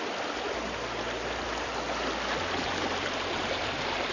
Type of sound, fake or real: real